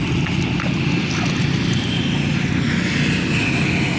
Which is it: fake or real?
real